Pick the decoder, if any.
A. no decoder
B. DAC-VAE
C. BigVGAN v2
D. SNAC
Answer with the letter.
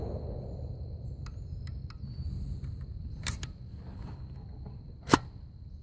A